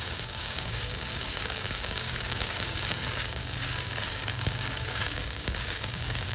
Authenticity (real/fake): fake